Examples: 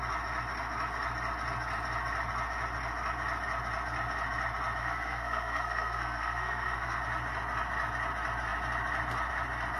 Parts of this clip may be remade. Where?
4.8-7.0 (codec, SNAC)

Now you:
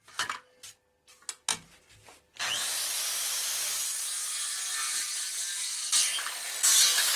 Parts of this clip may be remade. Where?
none

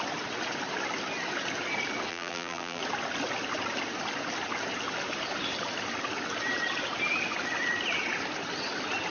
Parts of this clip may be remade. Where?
2.1-2.8 (vocoder, BigVGAN v2)

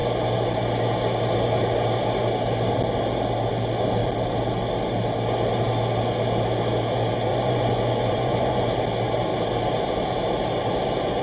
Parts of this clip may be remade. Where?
7.3-8.6 (vocoder, Vocos)

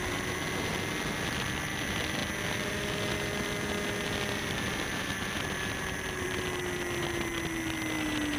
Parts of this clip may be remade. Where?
none

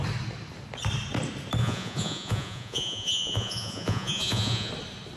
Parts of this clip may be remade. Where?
1.6-4.7 (vocoder, Vocos)

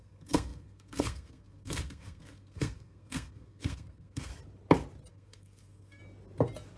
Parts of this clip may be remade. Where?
0.0-4.3 (codec, SNAC); 5.1-6.0

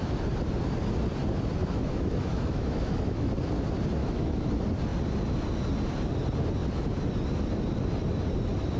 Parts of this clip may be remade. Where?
1.6-3.3 (autoencoder, DAC-VAE); 4.0-4.5